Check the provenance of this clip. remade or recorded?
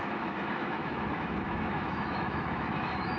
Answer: remade